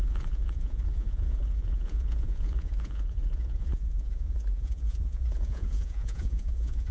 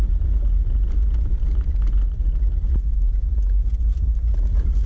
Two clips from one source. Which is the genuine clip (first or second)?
second